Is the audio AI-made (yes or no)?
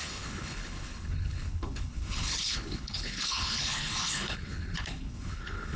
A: yes